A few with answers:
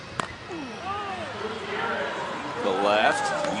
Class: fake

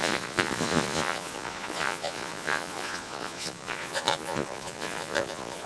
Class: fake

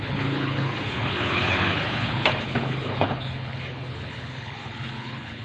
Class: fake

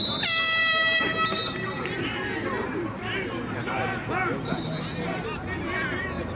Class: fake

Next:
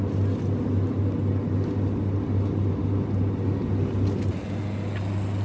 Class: real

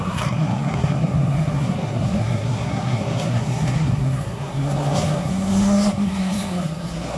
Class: fake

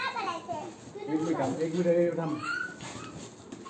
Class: real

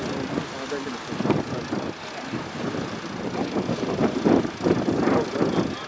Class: real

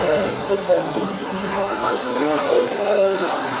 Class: fake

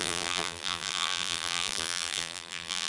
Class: fake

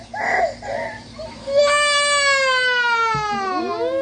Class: real